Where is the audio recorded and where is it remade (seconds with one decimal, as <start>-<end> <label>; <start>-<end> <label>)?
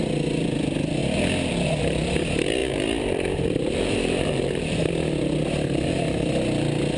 0.0-2.6 recorded; 2.6-4.9 remade; 4.9-7.0 recorded